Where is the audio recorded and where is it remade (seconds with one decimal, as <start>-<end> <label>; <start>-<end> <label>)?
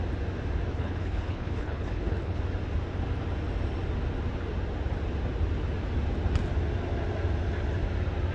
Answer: 0.0-0.7 recorded; 0.7-2.4 remade; 2.4-8.3 recorded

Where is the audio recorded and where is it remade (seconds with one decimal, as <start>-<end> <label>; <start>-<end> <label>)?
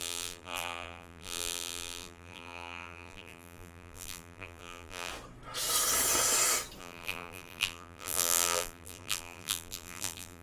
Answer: 0.0-5.1 remade; 5.1-6.8 recorded; 6.8-10.4 remade